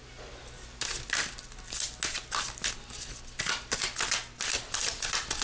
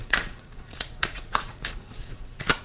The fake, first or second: second